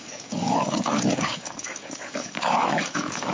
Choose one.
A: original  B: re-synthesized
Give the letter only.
B